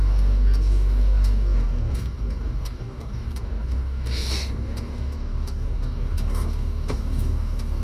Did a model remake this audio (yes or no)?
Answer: yes